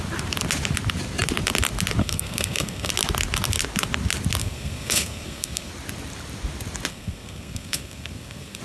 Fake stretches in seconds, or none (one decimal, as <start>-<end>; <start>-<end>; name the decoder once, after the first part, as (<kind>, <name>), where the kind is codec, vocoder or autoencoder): 2.0-2.9 (codec, SNAC); 4.4-5.7; 6.9-8.6